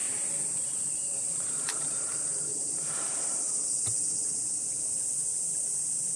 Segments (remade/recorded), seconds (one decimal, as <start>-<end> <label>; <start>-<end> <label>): 0.0-3.7 remade; 3.7-6.2 recorded